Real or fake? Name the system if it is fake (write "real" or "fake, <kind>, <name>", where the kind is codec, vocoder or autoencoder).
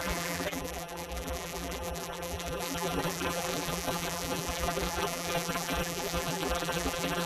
fake, vocoder, BigVGAN v2